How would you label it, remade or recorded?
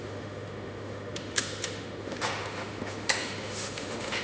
remade